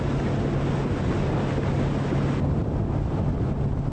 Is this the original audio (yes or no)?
yes